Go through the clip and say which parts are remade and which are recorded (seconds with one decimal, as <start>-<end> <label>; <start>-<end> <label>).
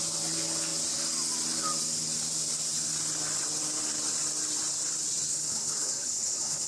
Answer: 0.0-5.3 recorded; 5.3-6.7 remade